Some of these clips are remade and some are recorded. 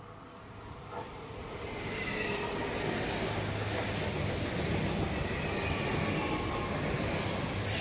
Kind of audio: recorded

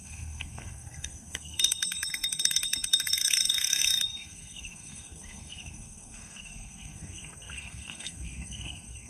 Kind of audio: remade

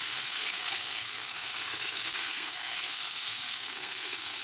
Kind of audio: remade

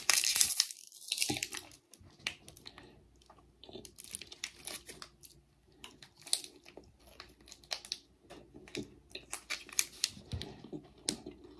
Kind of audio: recorded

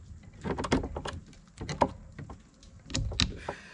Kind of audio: recorded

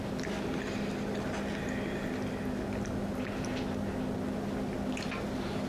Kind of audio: recorded